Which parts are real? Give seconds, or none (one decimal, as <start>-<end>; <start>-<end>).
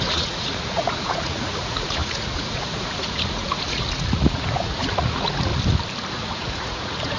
5.5-6.1